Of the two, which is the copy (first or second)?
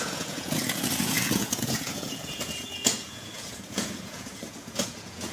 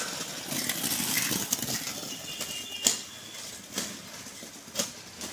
first